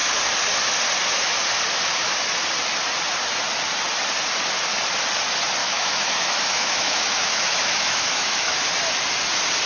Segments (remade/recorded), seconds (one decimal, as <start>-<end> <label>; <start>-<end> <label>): 0.0-5.6 recorded; 5.6-8.5 remade; 8.5-9.7 recorded